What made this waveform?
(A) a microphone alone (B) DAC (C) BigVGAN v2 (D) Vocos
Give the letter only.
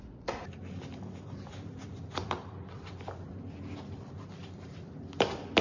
A